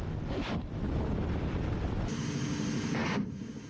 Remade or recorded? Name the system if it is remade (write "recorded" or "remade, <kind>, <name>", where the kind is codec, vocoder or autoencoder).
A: recorded